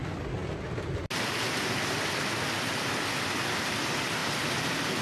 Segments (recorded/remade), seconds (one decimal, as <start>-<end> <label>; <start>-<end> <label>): 0.0-4.2 recorded; 4.2-5.0 remade